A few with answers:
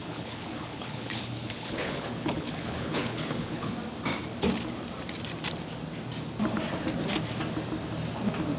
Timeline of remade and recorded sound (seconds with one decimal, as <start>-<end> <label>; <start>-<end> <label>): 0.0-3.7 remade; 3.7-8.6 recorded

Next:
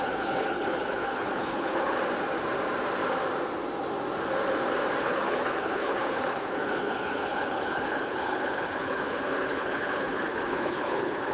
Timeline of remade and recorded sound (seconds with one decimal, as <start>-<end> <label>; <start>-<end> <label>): 0.0-2.0 remade; 2.0-5.0 recorded; 5.0-11.3 remade

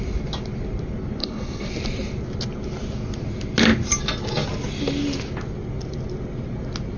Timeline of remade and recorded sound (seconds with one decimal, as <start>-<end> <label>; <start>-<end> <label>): 0.0-1.2 recorded; 1.2-1.7 remade; 1.7-7.0 recorded

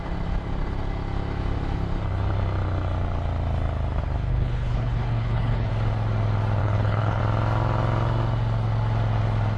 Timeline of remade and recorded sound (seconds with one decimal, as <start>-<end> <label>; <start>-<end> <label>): 0.0-4.3 recorded; 4.3-5.7 remade; 5.7-6.6 recorded; 6.6-7.2 remade; 7.2-9.6 recorded

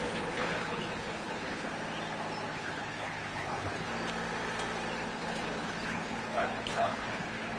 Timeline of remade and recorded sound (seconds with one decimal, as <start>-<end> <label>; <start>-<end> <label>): 0.0-1.7 remade; 1.7-2.5 recorded; 2.5-3.9 remade; 3.9-5.1 recorded; 5.1-7.6 remade

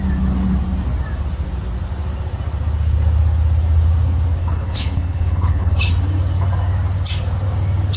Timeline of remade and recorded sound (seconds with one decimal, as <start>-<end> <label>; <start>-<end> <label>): 0.0-4.4 recorded; 4.4-5.9 remade; 5.9-8.0 recorded